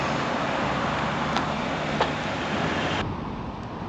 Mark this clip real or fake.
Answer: real